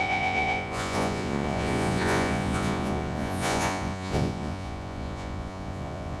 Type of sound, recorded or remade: remade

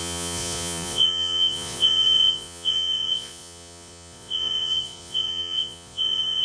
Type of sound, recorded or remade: remade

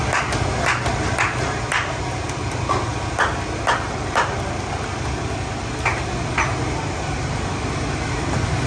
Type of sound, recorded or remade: recorded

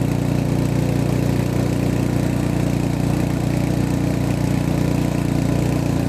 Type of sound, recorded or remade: recorded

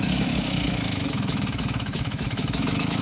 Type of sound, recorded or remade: remade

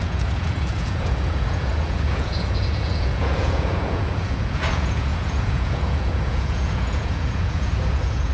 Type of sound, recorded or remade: remade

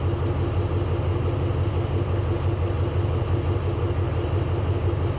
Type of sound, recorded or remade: recorded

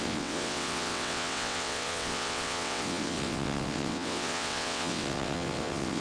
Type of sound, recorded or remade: remade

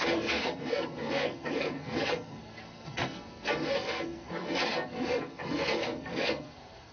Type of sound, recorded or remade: remade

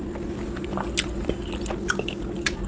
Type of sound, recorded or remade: recorded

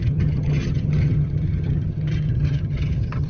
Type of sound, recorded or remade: remade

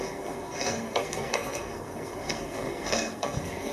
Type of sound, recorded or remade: remade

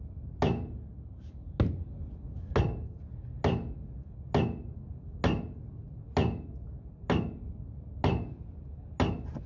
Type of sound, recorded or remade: recorded